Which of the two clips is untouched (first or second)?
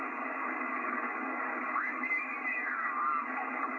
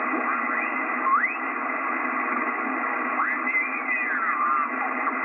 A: second